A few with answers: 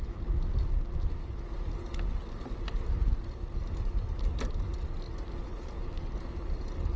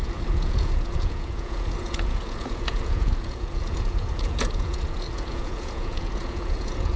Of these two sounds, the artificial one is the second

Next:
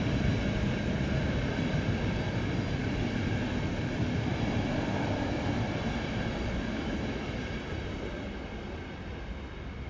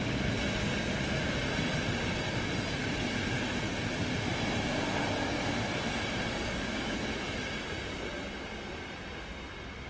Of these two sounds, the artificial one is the first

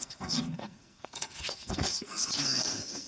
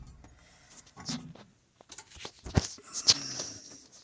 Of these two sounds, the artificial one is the first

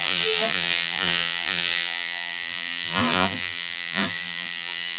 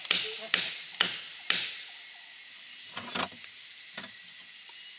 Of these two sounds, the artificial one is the first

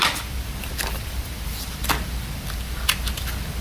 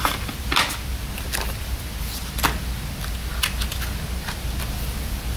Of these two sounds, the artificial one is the first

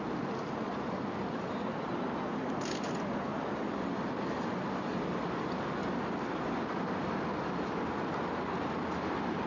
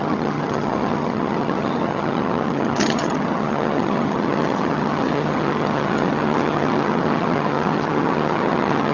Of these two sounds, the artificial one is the second